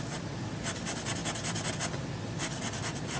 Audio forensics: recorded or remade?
recorded